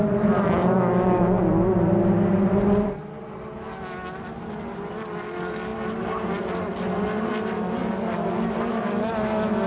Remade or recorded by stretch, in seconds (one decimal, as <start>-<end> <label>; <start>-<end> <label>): 0.0-9.7 recorded